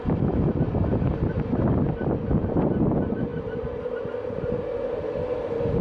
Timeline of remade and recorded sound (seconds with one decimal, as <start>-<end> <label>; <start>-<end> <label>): 0.0-5.8 recorded